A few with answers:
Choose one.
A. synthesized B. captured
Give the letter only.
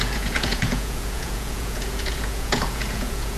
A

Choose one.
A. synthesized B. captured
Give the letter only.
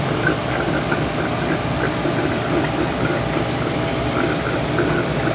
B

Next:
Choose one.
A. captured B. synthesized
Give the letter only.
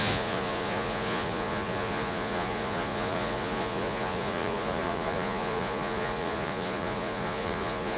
B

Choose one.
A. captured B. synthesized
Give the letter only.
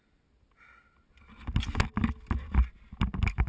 A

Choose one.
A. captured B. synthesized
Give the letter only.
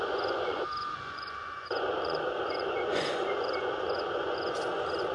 B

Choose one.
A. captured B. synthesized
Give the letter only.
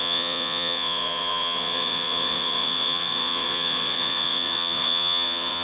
B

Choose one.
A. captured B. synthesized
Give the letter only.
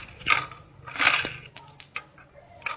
A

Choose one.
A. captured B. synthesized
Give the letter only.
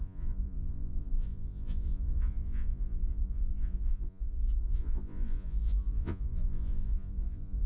B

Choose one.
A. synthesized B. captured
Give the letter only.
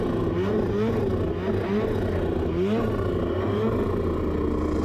B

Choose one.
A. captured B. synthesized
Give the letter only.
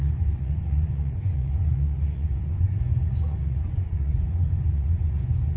B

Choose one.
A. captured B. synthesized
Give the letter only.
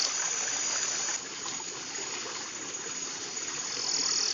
A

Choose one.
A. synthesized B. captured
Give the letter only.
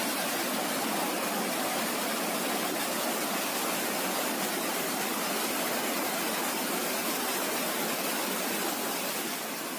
B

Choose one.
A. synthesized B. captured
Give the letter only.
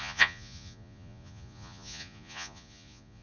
A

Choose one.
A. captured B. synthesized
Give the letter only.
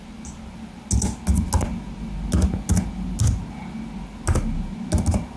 A